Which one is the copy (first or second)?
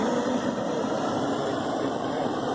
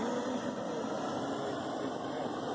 first